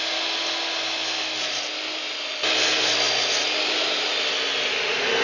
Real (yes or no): yes